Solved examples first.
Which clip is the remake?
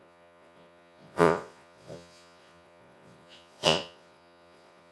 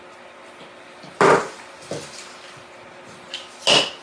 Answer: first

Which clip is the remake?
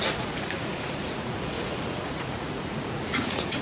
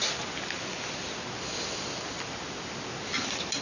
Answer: first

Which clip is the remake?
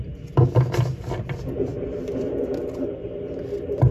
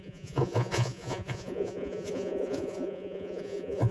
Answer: second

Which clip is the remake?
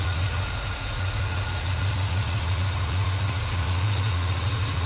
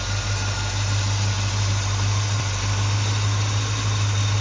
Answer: first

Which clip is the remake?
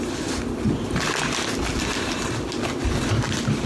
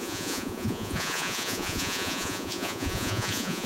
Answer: second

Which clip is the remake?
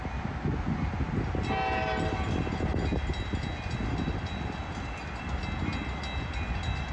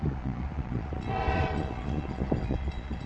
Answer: second